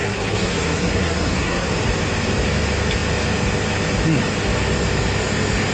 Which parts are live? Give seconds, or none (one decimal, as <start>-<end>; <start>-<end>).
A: 1.7-5.7